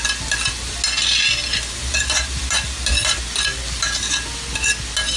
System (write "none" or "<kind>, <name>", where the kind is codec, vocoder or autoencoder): none